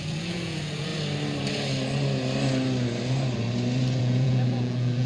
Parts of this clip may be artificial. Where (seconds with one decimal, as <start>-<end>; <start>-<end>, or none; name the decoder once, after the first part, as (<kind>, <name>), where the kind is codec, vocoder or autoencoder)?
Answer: 0.0-0.9 (vocoder, Vocos); 4.0-5.1